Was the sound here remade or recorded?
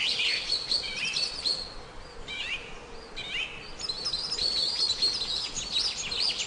recorded